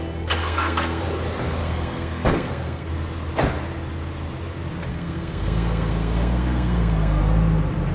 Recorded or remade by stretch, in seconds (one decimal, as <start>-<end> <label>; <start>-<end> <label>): 0.0-0.4 recorded; 0.4-1.0 remade; 1.0-1.6 recorded; 1.6-2.9 remade; 2.9-4.9 recorded; 4.9-7.2 remade; 7.2-7.9 recorded